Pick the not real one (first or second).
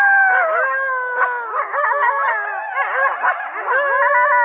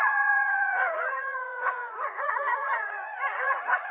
second